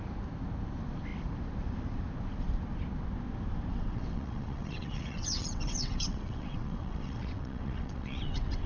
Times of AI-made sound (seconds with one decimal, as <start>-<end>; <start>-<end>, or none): 3.7-8.7